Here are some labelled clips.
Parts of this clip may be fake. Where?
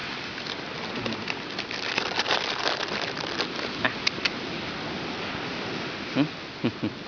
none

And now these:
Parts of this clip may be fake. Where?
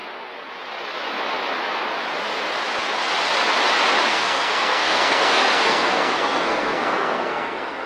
4.1-7.9 (codec, SNAC)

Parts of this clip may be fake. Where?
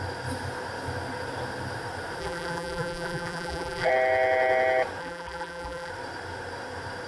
2.2-3.9 (vocoder, BigVGAN v2); 5.0-5.9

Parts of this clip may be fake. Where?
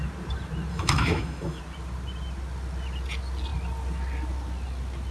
0.7-1.6 (autoencoder, DAC-VAE)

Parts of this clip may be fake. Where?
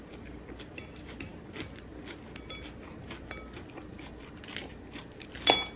none